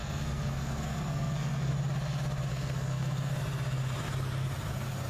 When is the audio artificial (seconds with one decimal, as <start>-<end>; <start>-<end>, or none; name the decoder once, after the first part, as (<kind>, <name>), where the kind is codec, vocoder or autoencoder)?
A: 0.0-1.7 (codec, SNAC); 2.5-3.4